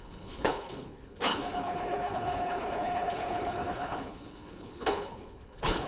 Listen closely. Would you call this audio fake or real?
fake